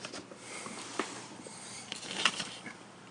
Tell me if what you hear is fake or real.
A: real